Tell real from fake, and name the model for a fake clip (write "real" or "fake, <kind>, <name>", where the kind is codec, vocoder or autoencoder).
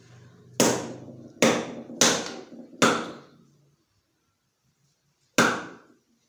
real